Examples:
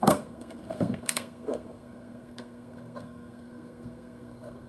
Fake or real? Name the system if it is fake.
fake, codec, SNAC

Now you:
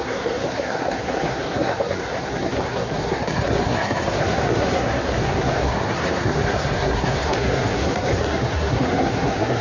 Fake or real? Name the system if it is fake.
fake, codec, SNAC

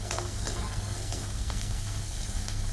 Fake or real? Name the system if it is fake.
fake, codec, SNAC